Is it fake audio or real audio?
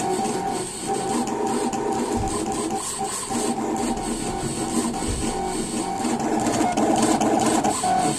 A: real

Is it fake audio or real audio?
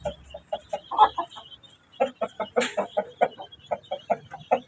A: real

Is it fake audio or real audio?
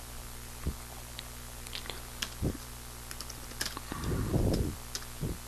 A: real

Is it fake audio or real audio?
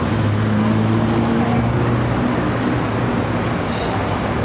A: real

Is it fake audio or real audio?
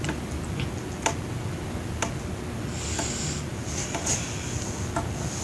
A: real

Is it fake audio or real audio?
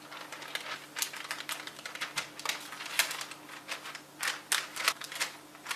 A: real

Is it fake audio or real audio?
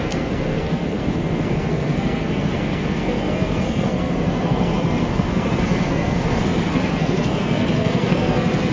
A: fake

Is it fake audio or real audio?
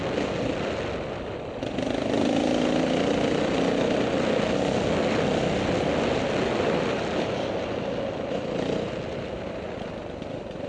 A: real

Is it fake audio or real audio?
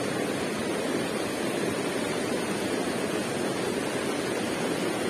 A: real